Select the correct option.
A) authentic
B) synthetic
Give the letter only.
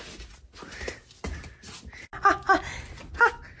A